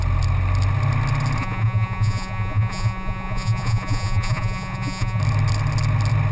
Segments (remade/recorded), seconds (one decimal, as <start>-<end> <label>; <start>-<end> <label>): 0.0-1.4 recorded; 1.4-5.2 remade; 5.2-6.3 recorded